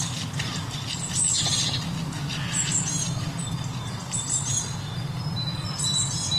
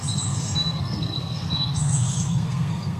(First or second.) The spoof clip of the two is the second